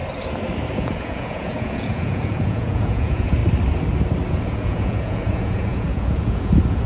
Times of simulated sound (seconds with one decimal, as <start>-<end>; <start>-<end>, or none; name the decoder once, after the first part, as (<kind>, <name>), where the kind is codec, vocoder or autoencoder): 0.7-3.4 (vocoder, Vocos); 4.3-6.9